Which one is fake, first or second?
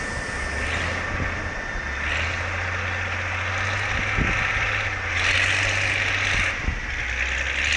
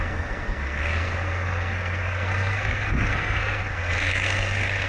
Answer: second